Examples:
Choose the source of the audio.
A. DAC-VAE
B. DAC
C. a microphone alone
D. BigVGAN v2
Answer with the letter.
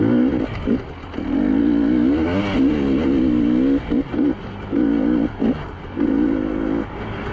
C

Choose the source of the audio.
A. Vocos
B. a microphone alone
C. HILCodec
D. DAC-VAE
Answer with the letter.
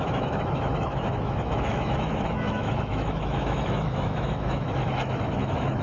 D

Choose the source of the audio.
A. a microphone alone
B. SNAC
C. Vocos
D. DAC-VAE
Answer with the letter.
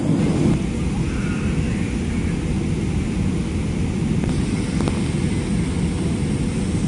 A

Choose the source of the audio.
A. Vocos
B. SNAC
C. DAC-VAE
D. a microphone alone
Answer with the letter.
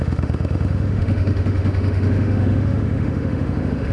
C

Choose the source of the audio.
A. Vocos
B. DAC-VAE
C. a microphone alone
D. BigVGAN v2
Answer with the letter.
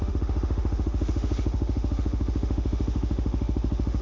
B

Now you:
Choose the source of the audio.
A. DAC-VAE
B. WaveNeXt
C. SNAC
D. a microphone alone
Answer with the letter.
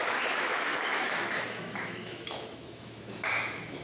A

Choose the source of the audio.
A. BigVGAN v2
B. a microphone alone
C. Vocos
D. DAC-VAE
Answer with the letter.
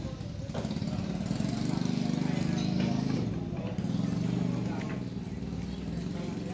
B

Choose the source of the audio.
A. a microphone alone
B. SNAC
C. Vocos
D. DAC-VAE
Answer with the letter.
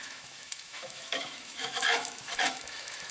D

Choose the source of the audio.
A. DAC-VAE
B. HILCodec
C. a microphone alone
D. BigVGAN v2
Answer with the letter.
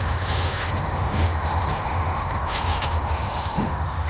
A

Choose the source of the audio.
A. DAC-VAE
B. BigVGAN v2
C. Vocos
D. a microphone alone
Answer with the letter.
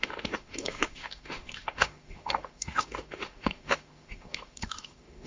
A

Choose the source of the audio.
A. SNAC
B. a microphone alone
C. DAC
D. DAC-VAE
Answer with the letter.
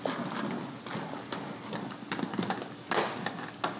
B